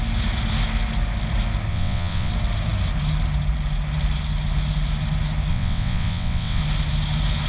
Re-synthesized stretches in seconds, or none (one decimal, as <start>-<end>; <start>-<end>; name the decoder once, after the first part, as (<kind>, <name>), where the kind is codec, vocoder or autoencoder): 1.7-2.3 (vocoder, WaveNeXt); 5.5-6.6

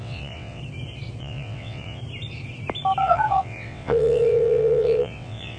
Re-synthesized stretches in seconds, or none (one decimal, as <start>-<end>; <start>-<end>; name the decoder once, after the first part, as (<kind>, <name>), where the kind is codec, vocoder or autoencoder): 0.0-0.6 (vocoder, WaveNeXt); 1.2-2.0; 3.0-5.6

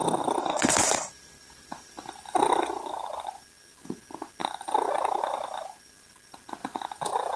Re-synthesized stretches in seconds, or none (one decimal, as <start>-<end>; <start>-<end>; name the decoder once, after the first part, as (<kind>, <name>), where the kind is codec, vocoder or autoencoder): 0.4-1.1 (vocoder, WaveNeXt)

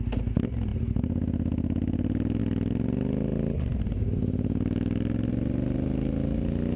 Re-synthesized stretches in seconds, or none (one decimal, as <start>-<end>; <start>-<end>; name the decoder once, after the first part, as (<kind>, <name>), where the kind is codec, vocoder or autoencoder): none

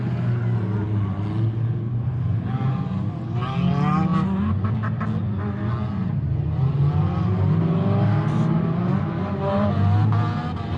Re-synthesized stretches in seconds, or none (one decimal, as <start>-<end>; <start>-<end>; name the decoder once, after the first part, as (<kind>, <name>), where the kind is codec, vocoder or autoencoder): none

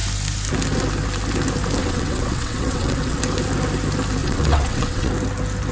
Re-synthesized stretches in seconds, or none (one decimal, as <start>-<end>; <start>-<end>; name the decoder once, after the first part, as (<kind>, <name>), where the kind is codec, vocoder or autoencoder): 1.8-3.2 (vocoder, WaveNeXt); 4.2-5.1

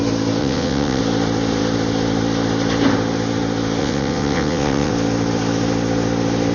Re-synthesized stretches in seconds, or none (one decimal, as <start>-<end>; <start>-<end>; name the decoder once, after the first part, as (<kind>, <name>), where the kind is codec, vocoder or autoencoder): 0.4-1.0 (vocoder, WaveNeXt); 3.8-4.9